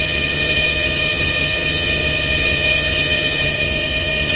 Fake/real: fake